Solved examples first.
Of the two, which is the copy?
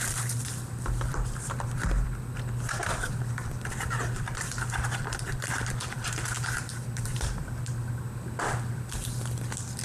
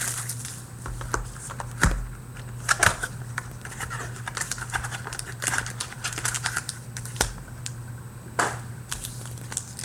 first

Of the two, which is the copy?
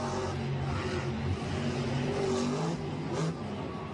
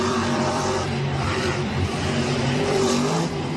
second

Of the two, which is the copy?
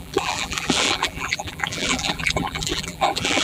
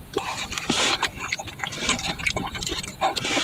first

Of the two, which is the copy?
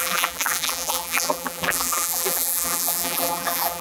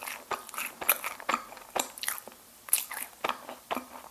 first